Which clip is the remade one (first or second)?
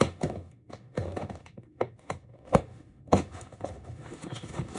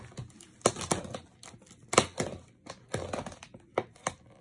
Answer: first